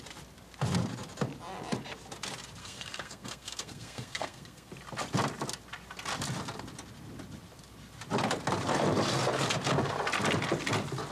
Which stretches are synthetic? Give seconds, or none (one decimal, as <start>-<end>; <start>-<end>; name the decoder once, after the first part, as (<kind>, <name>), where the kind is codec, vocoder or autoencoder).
2.6-4.7 (codec, SNAC)